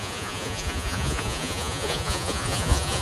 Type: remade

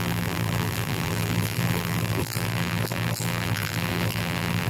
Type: remade